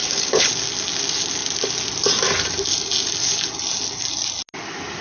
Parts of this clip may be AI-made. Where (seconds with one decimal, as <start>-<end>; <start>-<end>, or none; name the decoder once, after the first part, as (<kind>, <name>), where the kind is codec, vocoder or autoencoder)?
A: 0.0-0.5 (codec, HILCodec)